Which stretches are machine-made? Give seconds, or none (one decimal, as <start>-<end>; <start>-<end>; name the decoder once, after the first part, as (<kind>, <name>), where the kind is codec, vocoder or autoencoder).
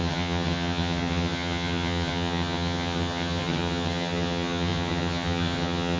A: 0.0-6.0 (vocoder, HiFi-GAN)